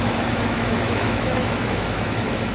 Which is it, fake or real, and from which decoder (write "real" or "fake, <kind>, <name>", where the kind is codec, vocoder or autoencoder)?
fake, autoencoder, DAC-VAE